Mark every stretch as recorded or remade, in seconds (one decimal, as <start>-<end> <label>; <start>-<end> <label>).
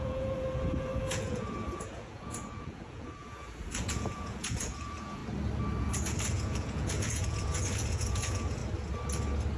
0.0-5.2 remade; 5.2-5.8 recorded; 5.8-8.6 remade; 8.6-9.6 recorded